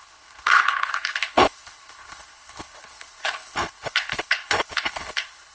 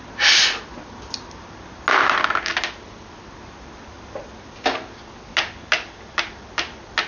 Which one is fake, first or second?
first